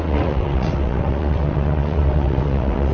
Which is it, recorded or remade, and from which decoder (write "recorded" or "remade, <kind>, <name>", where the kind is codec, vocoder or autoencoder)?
remade, vocoder, WaveNeXt